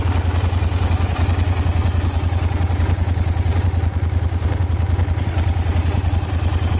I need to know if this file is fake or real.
real